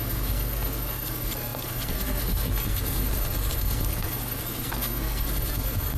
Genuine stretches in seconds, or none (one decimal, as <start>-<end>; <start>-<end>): none

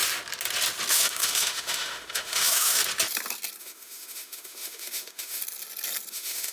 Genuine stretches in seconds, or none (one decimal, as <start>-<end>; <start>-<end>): 0.0-0.9; 2.8-3.6; 5.4-6.1